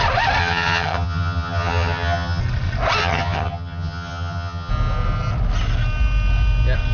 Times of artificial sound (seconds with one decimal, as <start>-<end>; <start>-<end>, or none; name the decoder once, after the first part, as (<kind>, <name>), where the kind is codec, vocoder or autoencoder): 0.4-2.4 (vocoder, HiFi-GAN); 3.0-4.7